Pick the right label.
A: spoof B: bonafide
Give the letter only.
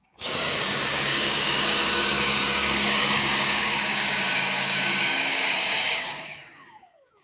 A